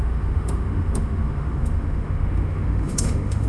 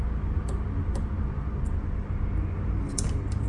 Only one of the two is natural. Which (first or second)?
second